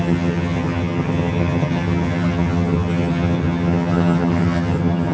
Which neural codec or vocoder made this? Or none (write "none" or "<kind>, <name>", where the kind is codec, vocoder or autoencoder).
vocoder, HiFi-GAN